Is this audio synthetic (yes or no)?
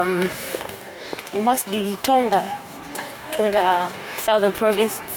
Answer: yes